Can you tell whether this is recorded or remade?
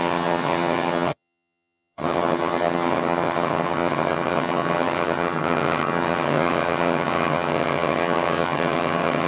remade